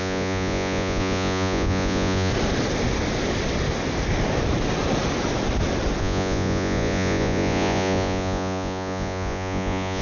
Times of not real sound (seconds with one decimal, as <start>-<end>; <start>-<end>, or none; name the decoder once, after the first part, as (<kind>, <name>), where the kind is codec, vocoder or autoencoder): 0.0-2.3 (vocoder, Vocos); 6.0-10.0